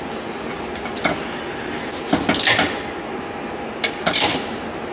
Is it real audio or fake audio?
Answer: real